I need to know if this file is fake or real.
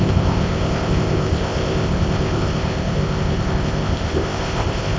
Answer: fake